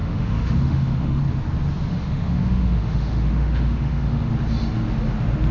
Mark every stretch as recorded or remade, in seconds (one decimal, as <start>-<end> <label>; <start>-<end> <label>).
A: 0.0-1.2 remade; 1.2-1.9 recorded; 1.9-4.3 remade; 4.3-5.5 recorded